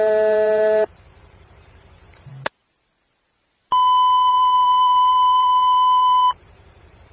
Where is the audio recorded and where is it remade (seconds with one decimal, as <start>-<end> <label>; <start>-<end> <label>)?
0.0-2.3 remade; 2.3-4.3 recorded; 4.3-7.1 remade